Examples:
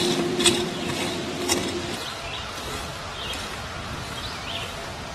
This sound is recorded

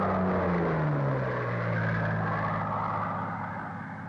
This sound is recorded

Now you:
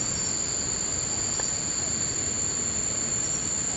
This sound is recorded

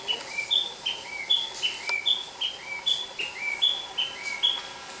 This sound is recorded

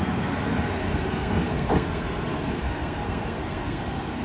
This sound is remade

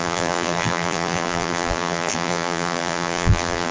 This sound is remade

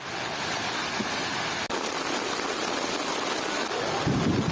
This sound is recorded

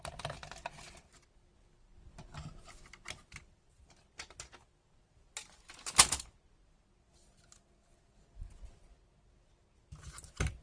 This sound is recorded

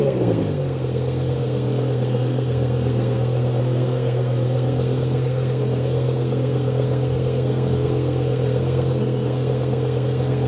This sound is remade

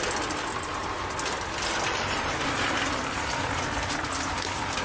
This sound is recorded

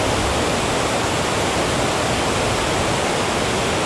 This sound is recorded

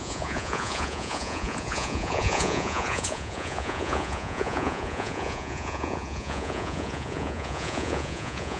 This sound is remade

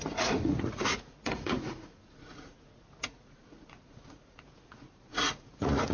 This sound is remade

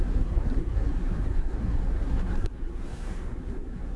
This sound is remade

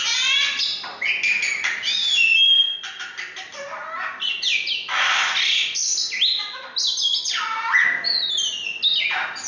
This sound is recorded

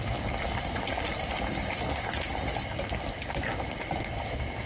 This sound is recorded